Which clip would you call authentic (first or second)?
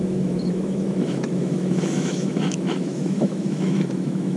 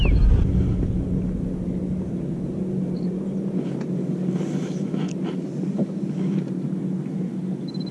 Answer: second